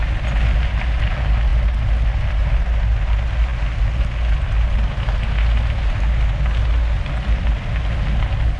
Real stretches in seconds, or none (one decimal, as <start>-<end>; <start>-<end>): 0.0-8.6